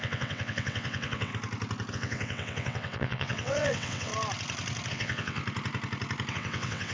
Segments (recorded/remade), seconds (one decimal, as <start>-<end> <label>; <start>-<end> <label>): 0.0-1.3 remade; 1.3-1.9 recorded; 1.9-4.1 remade; 4.1-4.9 recorded; 4.9-5.4 remade; 5.4-6.3 recorded; 6.3-6.9 remade